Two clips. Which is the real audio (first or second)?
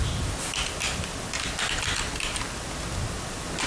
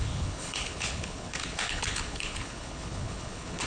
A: first